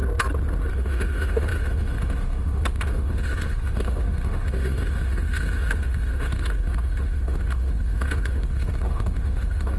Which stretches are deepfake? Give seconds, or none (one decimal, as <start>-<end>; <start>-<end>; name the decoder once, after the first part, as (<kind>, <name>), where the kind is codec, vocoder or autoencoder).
0.7-9.8 (autoencoder, DAC-VAE)